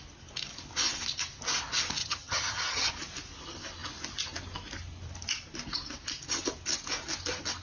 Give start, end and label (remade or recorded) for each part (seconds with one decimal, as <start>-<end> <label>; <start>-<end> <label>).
0.0-2.0 recorded; 2.0-2.9 remade; 2.9-7.6 recorded